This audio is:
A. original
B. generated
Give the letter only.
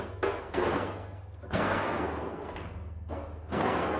B